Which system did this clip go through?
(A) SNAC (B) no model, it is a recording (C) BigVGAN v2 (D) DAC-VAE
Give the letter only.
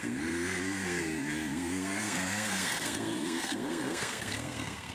A